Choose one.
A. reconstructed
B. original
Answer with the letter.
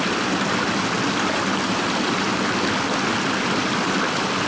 B